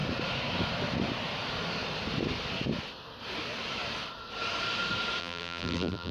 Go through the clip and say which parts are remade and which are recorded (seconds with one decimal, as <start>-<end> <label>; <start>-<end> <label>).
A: 0.0-5.2 recorded; 5.2-6.1 remade